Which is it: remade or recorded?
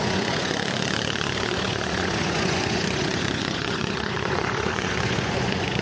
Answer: remade